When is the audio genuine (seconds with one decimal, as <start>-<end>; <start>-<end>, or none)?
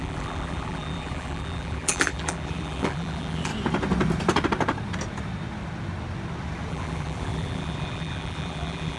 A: 3.5-6.7